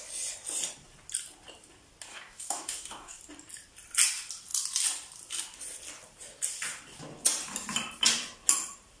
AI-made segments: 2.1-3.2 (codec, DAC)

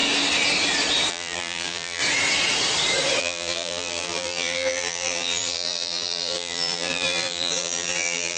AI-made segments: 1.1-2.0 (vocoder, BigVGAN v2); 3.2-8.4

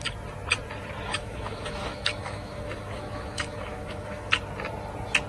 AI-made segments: 1.1-4.3 (autoencoder, DAC-VAE)

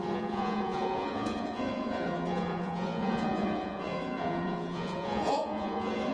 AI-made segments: 0.0-6.1 (vocoder, Vocos)

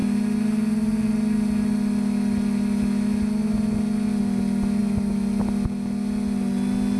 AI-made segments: none

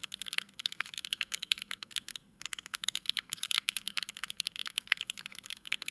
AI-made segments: 0.0-5.9 (codec, SNAC)